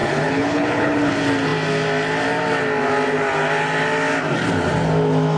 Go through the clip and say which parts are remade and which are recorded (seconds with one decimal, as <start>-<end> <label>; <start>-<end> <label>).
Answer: 0.0-1.1 remade; 1.1-5.4 recorded

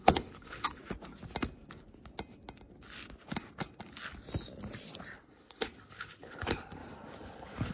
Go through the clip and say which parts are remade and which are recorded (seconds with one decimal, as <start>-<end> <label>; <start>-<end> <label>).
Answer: 0.0-0.8 remade; 0.8-5.2 recorded; 5.2-6.8 remade; 6.8-7.7 recorded

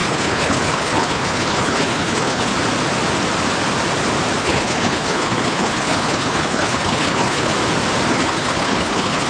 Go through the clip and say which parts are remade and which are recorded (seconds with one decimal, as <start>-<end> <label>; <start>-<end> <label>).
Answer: 0.0-2.5 remade; 2.5-4.4 recorded; 4.4-7.5 remade; 7.5-8.1 recorded; 8.1-9.3 remade

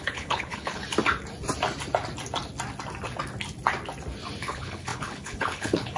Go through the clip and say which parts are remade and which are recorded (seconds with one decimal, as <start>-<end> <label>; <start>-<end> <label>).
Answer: 0.0-0.8 remade; 0.8-4.4 recorded; 4.4-6.0 remade

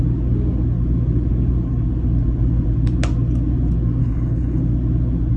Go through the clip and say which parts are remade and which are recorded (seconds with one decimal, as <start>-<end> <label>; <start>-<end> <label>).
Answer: 0.0-4.0 recorded; 4.0-4.6 remade; 4.6-5.4 recorded

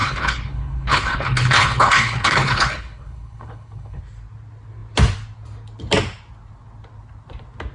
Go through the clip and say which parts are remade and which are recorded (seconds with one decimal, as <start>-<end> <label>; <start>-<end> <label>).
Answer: 0.0-4.0 remade; 4.0-7.7 recorded

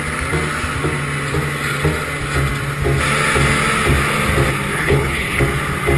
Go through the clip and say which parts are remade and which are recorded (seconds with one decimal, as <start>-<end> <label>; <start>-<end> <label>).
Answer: 0.0-4.7 recorded; 4.7-5.4 remade; 5.4-6.0 recorded

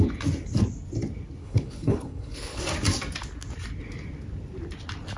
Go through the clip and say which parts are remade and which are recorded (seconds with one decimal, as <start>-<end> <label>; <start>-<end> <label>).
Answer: 0.0-1.4 recorded; 1.4-2.6 remade; 2.6-5.2 recorded